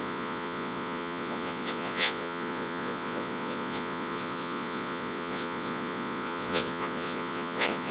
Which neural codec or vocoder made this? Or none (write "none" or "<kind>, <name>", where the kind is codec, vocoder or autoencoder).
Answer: vocoder, Vocos